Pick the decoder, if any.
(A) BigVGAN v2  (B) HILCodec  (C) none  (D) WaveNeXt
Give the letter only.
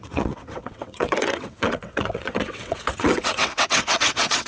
D